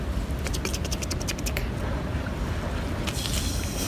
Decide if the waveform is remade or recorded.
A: recorded